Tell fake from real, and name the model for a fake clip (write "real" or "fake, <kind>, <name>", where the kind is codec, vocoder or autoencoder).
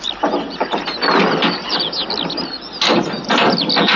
real